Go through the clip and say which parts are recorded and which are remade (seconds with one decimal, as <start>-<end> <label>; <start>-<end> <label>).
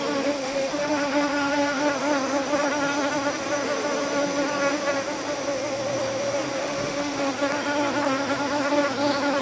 0.0-0.4 recorded; 0.4-1.8 remade; 1.8-6.6 recorded; 6.6-7.3 remade; 7.3-9.4 recorded